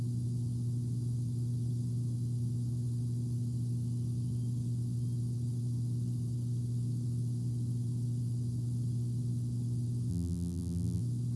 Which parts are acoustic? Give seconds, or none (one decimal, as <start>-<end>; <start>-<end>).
0.0-10.1; 11.0-11.4